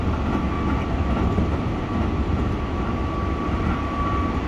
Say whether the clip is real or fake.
real